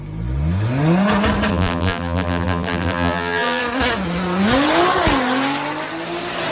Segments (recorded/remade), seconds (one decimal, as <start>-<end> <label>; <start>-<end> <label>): 0.0-1.5 recorded; 1.5-3.6 remade; 3.6-6.5 recorded